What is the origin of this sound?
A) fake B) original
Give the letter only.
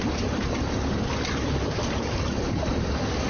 B